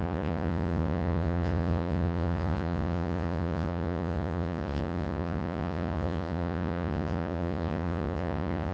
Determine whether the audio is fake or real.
fake